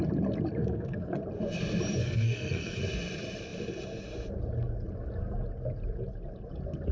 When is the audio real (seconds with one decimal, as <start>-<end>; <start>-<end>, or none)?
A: 0.0-0.6; 1.2-2.0; 2.8-6.9